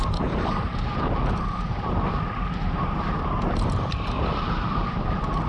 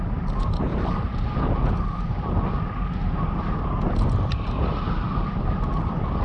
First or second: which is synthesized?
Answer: first